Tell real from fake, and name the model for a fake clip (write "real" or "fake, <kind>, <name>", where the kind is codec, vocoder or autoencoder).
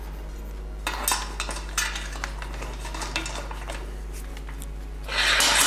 real